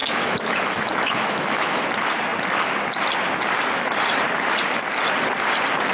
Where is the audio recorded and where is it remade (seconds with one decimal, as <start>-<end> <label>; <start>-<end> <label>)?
0.0-1.9 remade; 1.9-5.9 recorded